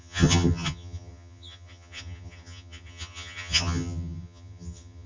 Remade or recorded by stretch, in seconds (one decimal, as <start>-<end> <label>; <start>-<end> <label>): 0.0-5.1 remade